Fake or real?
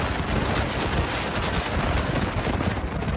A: real